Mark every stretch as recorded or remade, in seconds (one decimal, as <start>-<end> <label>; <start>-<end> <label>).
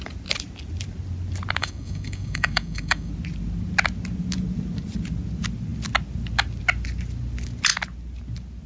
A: 0.0-1.6 recorded; 1.6-3.1 remade; 3.1-8.7 recorded